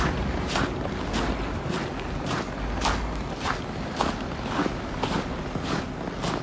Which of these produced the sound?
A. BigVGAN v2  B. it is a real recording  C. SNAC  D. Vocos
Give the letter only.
B